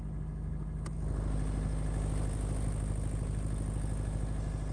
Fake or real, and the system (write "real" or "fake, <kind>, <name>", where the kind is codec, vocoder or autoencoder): real